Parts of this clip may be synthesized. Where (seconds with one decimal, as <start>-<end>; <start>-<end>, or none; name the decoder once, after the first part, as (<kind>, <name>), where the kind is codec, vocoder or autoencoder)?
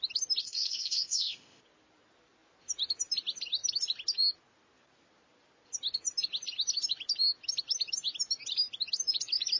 0.4-1.6 (codec, ZipCodec)